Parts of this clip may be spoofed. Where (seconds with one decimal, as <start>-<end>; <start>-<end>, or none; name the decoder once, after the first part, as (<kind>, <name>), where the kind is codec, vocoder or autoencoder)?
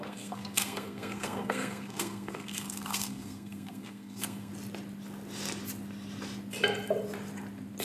0.0-4.5 (codec, SNAC)